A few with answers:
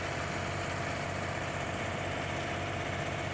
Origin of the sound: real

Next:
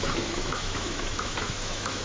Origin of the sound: fake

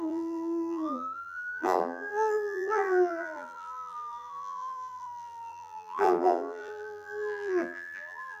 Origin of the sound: fake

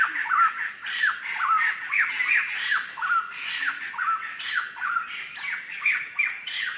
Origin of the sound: real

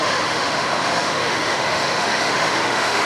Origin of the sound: fake